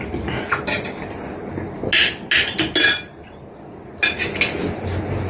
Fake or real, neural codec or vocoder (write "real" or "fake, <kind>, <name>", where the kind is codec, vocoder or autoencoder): real